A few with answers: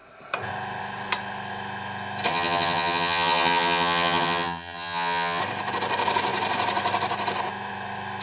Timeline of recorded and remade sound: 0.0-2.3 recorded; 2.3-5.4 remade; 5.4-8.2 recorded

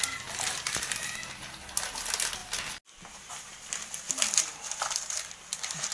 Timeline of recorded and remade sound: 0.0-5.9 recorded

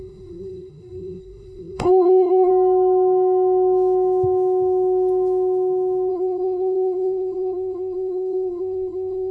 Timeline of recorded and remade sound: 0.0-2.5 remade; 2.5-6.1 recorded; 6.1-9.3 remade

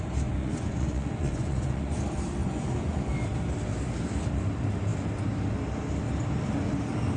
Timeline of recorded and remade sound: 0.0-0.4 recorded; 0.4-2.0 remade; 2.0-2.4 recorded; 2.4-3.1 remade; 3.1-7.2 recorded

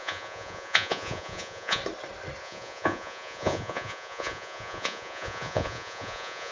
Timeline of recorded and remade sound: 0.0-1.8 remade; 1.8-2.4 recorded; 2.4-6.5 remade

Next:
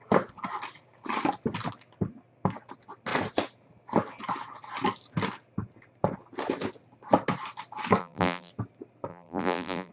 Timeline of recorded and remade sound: 0.0-8.0 recorded; 8.0-8.5 remade; 8.5-9.1 recorded; 9.1-9.9 remade

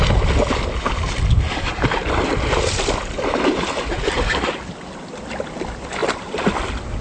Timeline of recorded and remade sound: 0.0-7.0 recorded

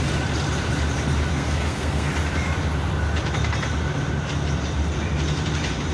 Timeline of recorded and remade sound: 0.0-1.3 recorded; 1.3-2.1 remade; 2.1-5.9 recorded